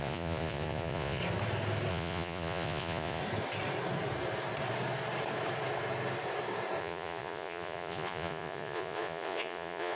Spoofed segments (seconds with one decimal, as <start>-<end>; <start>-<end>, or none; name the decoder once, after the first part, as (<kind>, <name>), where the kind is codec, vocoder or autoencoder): 0.0-1.2 (vocoder, Vocos); 1.9-3.2; 6.8-10.0